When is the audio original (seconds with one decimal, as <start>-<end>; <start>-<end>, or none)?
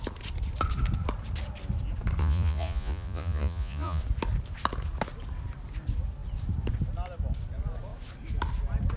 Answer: 0.0-2.2; 4.0-9.0